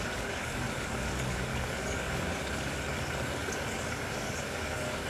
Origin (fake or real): fake